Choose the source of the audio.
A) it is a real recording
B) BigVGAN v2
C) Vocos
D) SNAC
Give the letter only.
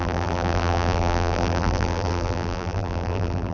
B